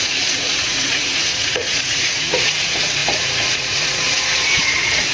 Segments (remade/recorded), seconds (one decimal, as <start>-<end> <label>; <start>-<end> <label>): 0.0-5.1 remade